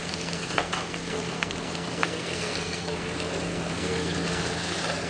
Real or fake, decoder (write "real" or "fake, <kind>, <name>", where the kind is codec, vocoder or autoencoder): fake, codec, SNAC